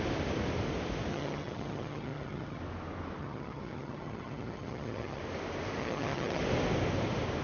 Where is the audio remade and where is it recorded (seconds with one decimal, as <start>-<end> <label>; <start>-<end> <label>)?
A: 0.0-1.1 recorded; 1.1-2.6 remade; 2.6-3.2 recorded; 3.2-5.2 remade; 5.2-5.8 recorded; 5.8-6.4 remade; 6.4-7.4 recorded